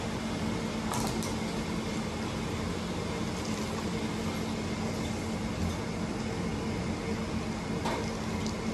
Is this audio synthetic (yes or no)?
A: no